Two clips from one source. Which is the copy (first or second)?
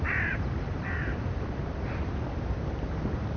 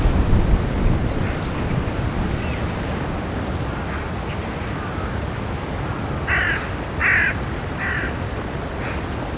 first